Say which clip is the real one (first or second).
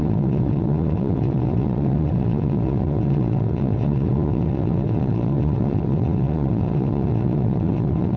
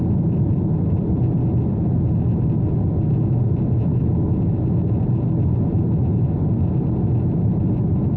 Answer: second